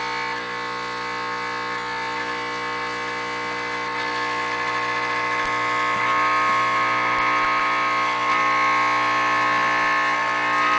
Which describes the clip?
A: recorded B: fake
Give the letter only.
A